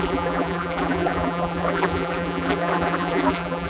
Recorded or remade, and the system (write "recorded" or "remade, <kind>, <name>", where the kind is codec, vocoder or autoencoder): remade, vocoder, BigVGAN v2